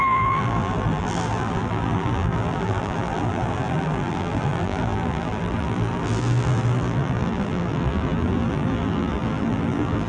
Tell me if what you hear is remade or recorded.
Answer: remade